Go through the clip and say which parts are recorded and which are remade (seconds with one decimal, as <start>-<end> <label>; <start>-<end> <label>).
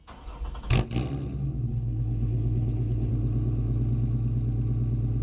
0.0-1.7 recorded; 1.7-3.1 remade; 3.1-5.2 recorded